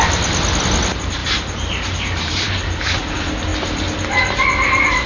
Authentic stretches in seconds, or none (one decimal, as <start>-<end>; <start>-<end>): 0.0-1.2; 3.1-5.1